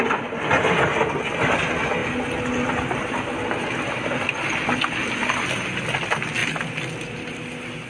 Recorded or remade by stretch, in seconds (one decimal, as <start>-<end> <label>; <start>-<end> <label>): 0.0-7.9 recorded